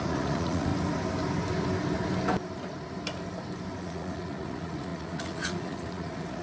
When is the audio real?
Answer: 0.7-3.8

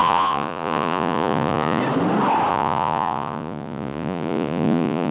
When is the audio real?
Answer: 1.8-2.5